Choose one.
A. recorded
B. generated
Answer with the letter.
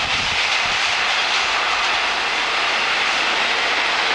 A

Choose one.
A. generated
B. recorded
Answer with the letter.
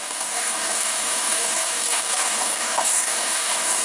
A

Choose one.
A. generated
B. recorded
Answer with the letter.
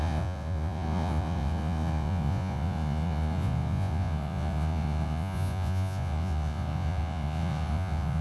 A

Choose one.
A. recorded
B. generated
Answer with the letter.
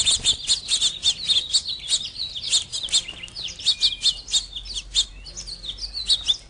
A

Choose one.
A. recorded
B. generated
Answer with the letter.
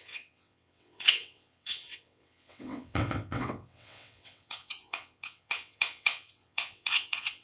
B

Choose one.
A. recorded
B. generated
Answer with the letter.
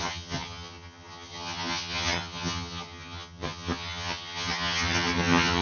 B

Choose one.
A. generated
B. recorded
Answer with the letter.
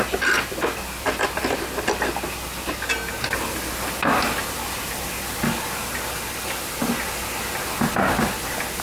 B